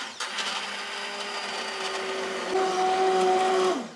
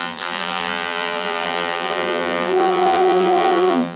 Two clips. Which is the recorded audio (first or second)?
first